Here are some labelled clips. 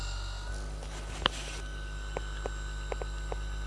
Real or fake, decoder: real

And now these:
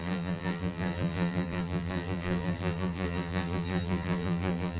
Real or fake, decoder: fake, vocoder, BigVGAN v2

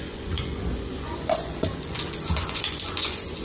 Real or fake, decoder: fake, vocoder, Vocos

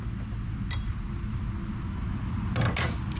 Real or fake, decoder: real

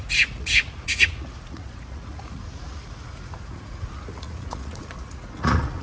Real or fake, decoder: fake, vocoder, Vocos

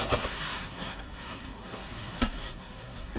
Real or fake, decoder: fake, codec, SNAC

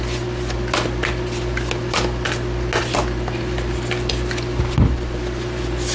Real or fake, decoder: real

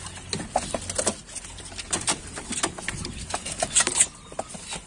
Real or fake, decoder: real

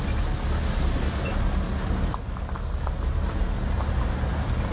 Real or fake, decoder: real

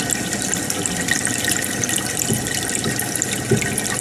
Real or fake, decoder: real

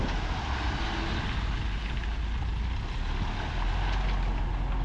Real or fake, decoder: real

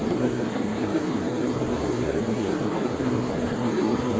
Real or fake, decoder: fake, codec, SNAC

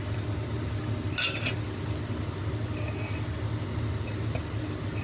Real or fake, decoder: real